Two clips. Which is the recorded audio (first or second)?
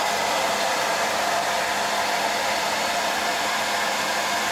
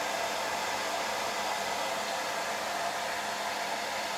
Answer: second